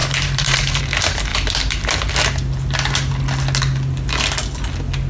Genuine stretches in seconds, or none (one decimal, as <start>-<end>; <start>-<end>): 0.8-5.1